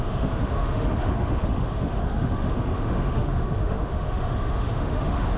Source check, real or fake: fake